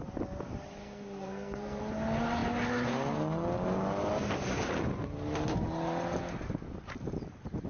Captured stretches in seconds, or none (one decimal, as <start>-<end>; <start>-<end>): 0.0-0.8; 1.8-7.7